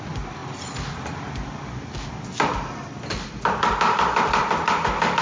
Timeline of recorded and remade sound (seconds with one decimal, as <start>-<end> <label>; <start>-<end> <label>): 0.0-5.2 recorded